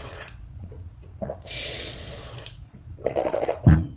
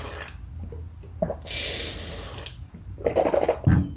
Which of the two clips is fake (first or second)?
first